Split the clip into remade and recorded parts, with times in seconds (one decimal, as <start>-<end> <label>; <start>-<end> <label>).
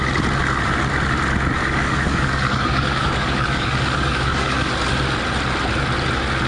0.0-1.6 recorded; 1.6-4.7 remade; 4.7-6.5 recorded